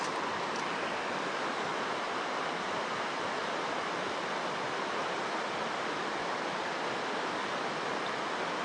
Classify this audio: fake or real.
real